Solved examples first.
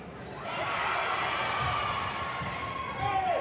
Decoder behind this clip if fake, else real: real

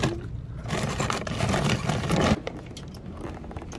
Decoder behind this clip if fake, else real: real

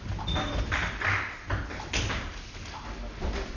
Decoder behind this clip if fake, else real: real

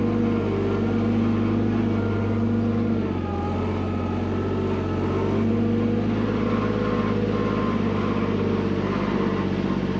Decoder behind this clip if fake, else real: real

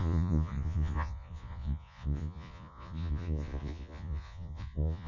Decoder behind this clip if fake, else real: fake, vocoder, Vocos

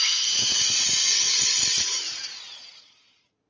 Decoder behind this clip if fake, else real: fake, vocoder, Vocos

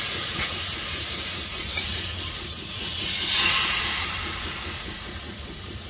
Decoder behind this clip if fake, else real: fake, vocoder, Vocos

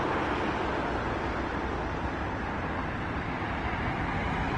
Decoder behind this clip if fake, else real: real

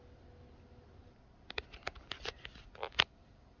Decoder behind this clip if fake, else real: real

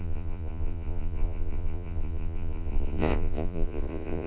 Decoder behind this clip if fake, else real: fake, vocoder, Vocos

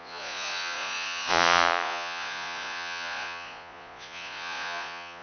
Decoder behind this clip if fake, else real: fake, vocoder, Vocos